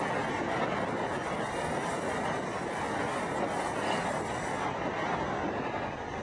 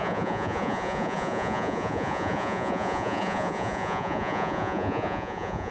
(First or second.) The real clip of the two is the first